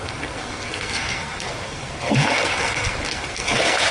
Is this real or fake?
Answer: fake